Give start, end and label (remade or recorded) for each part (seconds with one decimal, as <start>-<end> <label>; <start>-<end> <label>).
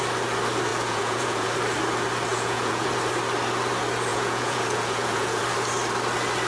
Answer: 0.0-0.7 recorded; 0.7-1.5 remade; 1.5-2.3 recorded; 2.3-2.9 remade; 2.9-4.1 recorded; 4.1-5.4 remade; 5.4-6.5 recorded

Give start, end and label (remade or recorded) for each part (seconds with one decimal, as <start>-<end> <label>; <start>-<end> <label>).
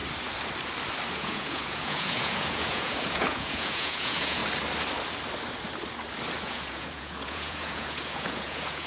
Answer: 0.0-1.1 recorded; 1.1-4.4 remade; 4.4-6.4 recorded; 6.4-8.9 remade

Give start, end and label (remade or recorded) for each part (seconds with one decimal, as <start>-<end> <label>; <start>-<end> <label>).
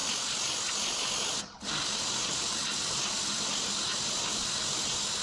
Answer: 0.0-5.2 recorded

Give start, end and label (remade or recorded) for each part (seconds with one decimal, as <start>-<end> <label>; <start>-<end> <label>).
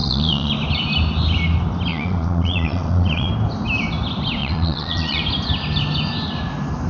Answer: 0.0-0.5 remade; 0.5-1.9 recorded; 1.9-3.3 remade; 3.3-4.4 recorded; 4.4-5.2 remade; 5.2-6.9 recorded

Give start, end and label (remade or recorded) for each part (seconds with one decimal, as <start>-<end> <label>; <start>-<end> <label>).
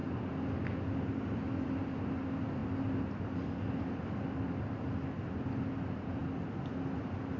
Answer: 0.0-7.4 recorded